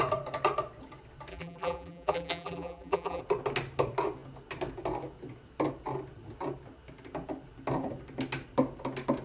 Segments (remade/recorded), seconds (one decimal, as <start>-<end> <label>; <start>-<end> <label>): 0.0-1.3 recorded; 1.3-3.2 remade; 3.2-9.2 recorded